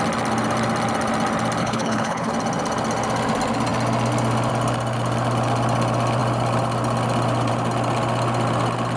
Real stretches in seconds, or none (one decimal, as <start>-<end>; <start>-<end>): 0.0-1.6; 2.3-9.0